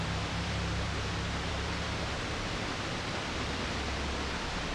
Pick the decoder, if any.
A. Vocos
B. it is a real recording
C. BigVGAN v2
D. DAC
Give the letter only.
C